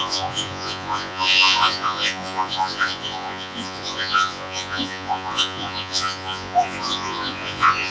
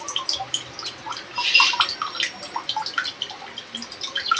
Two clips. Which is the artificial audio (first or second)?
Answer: first